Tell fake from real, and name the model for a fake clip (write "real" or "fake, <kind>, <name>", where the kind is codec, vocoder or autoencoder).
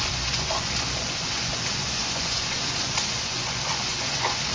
fake, vocoder, Vocos